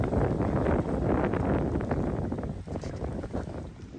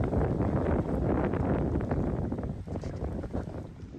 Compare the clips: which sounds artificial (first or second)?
second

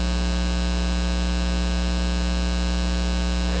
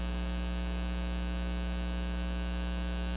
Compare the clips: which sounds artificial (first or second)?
second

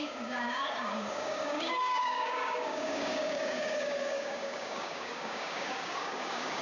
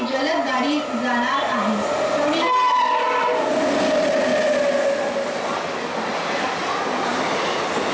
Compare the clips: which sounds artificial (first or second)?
first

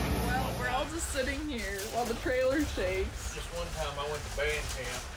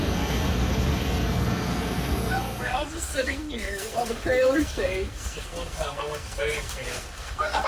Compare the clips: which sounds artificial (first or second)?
second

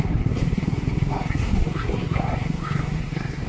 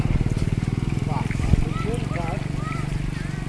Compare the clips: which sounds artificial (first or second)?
first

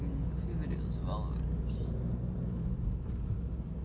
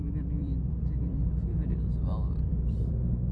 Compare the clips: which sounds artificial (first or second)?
second